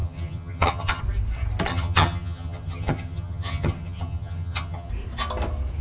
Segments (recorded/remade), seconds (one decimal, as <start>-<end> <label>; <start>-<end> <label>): 0.0-1.0 remade; 1.0-1.7 recorded; 1.7-4.9 remade; 4.9-5.8 recorded